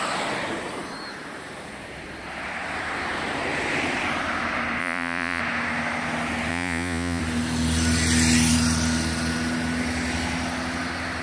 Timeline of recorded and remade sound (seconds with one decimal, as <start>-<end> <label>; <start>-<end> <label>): 0.0-4.8 recorded; 4.8-5.4 remade; 5.4-6.5 recorded; 6.5-7.2 remade; 7.2-11.2 recorded

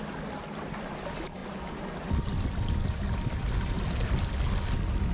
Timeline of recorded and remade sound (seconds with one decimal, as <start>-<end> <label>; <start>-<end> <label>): 0.0-5.1 recorded

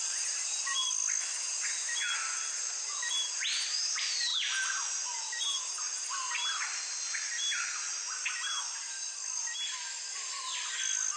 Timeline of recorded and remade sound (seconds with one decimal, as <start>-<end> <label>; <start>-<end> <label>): 0.0-11.2 recorded

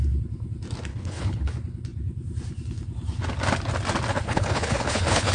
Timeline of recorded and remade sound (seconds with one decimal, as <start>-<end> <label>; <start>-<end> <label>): 0.0-0.9 recorded; 0.9-1.5 remade; 1.5-4.1 recorded; 4.1-5.3 remade

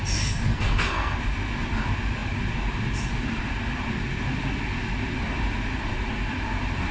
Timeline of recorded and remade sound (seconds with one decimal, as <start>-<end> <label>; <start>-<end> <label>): 0.0-0.5 recorded; 0.5-1.2 remade; 1.2-6.9 recorded

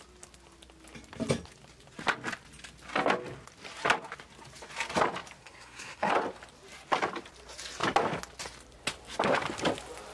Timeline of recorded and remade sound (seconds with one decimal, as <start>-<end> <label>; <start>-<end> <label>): 0.0-5.4 recorded; 5.4-6.1 remade; 6.1-10.1 recorded